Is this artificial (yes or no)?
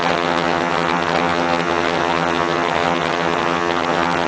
yes